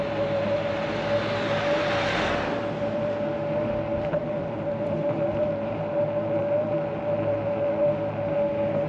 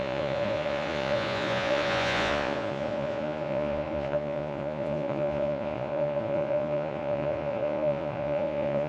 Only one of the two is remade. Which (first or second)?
second